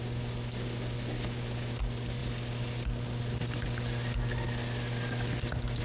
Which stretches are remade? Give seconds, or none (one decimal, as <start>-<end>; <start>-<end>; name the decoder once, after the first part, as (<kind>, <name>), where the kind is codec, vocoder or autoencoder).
none